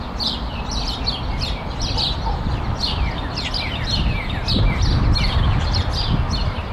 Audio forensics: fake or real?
fake